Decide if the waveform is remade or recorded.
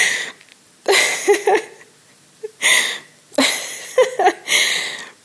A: recorded